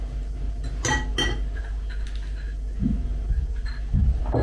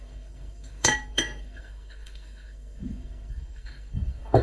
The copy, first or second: second